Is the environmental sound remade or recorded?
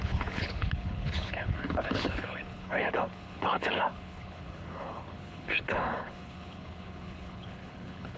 remade